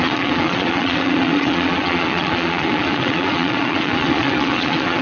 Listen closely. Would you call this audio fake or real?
fake